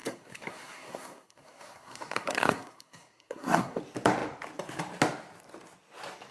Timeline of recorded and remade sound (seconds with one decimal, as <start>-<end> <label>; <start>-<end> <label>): 0.0-3.8 remade; 3.8-6.3 recorded

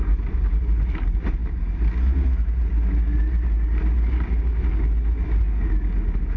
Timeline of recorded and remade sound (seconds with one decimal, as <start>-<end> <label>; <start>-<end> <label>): 0.0-6.4 recorded

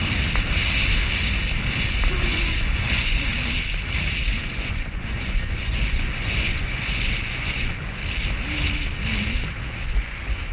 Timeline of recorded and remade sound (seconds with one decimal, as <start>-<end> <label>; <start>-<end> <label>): 0.0-2.1 recorded; 2.1-3.3 remade; 3.3-4.3 recorded; 4.3-8.0 remade; 8.0-9.7 recorded; 9.7-10.5 remade

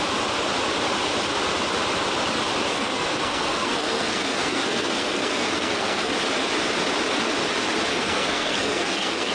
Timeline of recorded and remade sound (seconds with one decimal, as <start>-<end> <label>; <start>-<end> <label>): 0.0-2.7 recorded; 2.7-6.1 remade; 6.1-7.9 recorded; 7.9-9.3 remade

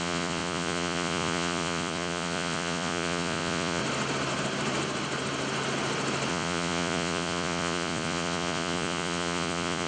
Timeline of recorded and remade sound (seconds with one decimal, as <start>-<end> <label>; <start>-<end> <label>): 0.0-3.8 remade; 3.8-6.3 recorded; 6.3-9.9 remade